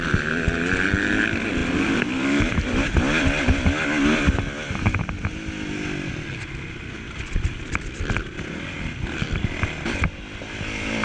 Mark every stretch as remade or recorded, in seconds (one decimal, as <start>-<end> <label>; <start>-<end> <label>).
0.0-11.0 recorded